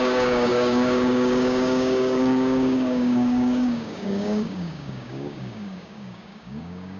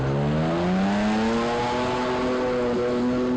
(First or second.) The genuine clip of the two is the second